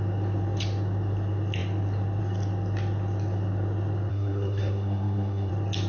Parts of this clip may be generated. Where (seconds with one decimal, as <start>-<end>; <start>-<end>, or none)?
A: 4.1-5.5